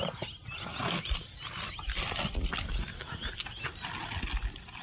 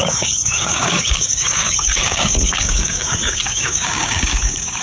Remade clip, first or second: second